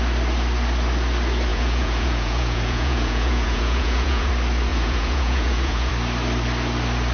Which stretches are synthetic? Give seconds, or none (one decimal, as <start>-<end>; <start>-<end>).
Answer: 1.5-4.3; 4.7-5.9